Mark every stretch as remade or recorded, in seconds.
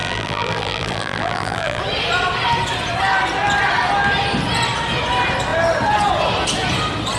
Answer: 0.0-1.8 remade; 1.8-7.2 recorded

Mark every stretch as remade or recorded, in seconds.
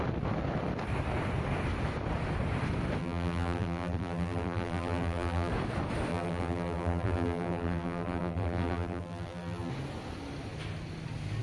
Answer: 0.0-3.0 recorded; 3.0-5.5 remade; 5.5-6.1 recorded; 6.1-9.7 remade; 9.7-11.4 recorded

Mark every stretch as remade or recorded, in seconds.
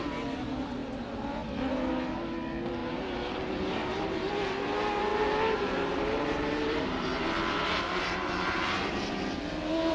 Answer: 0.0-2.8 recorded; 2.8-4.3 remade; 4.3-5.1 recorded; 5.1-9.1 remade; 9.1-9.9 recorded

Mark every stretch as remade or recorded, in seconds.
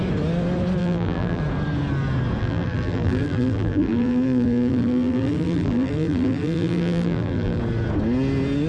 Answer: 0.0-0.8 recorded; 0.8-1.4 remade; 1.4-2.4 recorded; 2.4-7.6 remade; 7.6-8.7 recorded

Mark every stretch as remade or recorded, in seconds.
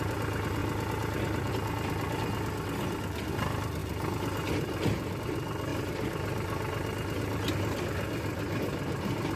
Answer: 0.0-9.4 recorded